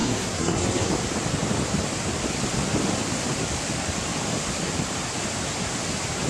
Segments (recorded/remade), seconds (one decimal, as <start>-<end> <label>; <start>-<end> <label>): 0.0-0.9 remade; 0.9-6.3 recorded